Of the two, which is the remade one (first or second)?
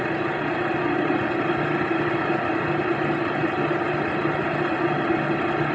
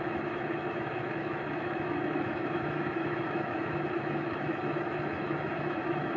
second